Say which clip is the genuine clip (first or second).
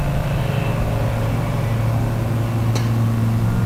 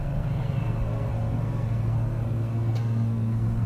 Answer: first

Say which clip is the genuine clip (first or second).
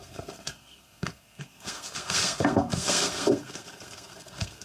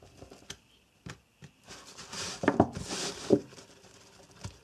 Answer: second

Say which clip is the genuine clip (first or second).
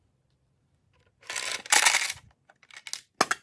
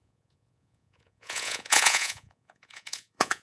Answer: first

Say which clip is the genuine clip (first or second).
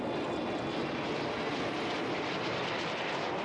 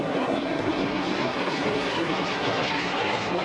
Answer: first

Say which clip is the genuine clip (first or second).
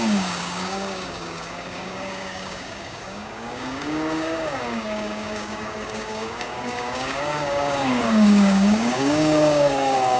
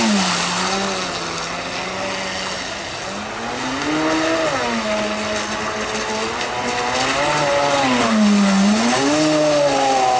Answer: second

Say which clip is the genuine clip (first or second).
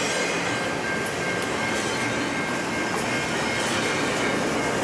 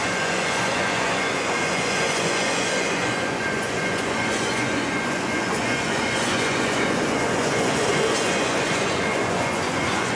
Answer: first